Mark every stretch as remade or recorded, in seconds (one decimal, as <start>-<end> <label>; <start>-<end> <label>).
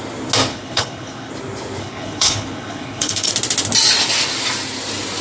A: 0.0-0.5 recorded; 0.5-1.3 remade; 1.3-1.8 recorded; 1.8-3.3 remade; 3.3-5.2 recorded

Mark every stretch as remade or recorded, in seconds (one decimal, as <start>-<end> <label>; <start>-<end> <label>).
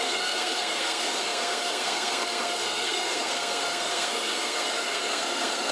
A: 0.0-5.7 remade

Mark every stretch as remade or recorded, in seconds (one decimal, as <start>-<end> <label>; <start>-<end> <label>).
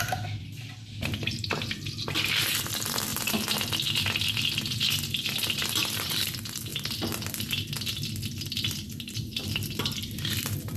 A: 0.0-3.1 remade; 3.1-5.4 recorded; 5.4-6.7 remade; 6.7-8.4 recorded; 8.4-10.8 remade